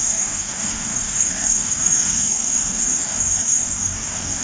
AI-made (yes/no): yes